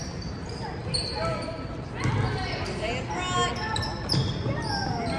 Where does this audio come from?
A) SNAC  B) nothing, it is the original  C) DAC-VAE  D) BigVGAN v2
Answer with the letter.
B